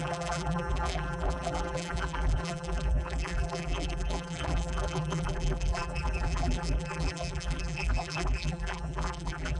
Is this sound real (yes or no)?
no